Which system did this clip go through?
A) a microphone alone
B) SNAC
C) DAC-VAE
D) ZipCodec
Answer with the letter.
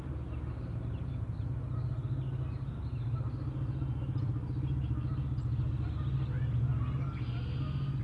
A